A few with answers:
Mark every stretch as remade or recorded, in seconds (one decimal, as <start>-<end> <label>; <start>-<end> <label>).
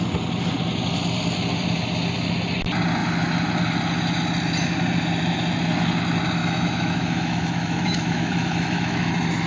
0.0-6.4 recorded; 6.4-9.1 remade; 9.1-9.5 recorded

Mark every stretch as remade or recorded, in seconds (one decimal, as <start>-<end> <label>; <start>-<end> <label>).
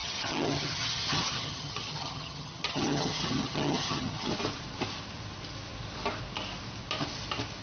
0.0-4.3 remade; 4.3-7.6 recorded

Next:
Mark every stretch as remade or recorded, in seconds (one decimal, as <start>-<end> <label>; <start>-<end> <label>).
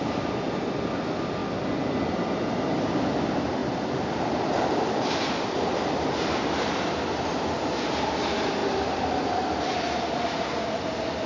0.0-1.4 remade; 1.4-2.7 recorded; 2.7-11.3 remade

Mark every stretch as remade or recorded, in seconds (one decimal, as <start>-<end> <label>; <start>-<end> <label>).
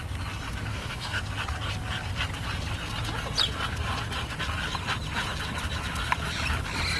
0.0-0.7 recorded; 0.7-1.2 remade; 1.2-7.0 recorded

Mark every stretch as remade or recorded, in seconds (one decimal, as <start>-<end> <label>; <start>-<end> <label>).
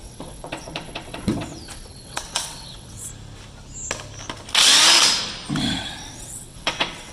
0.0-3.1 remade; 3.1-5.6 recorded; 5.6-7.1 remade